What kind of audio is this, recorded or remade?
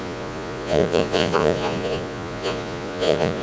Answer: remade